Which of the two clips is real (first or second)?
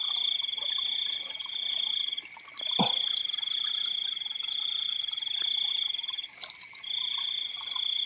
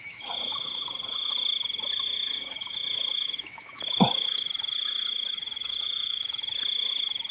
first